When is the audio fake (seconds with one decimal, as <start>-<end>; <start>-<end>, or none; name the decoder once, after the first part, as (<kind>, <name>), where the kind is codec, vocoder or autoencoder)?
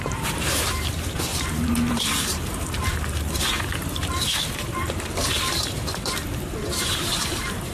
0.0-7.7 (vocoder, BigVGAN v2)